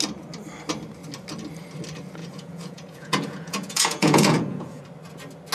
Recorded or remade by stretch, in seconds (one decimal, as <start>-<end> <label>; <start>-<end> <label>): 0.0-2.2 recorded; 2.2-4.8 remade; 4.8-5.5 recorded